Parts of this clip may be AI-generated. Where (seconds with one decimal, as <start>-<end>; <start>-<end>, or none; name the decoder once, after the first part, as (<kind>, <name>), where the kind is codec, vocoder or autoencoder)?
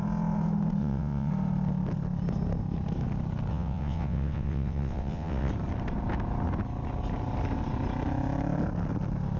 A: 0.8-1.3 (vocoder, WaveNeXt); 3.5-5.5